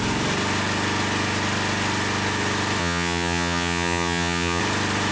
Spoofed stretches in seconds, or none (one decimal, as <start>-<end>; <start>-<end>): 2.8-4.6